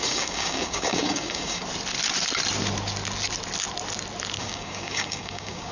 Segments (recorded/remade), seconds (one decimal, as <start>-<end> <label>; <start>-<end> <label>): 0.0-1.6 remade; 1.6-4.4 recorded; 4.4-5.7 remade

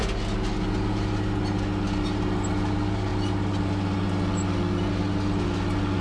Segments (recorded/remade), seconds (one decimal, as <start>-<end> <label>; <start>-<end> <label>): 0.0-6.0 recorded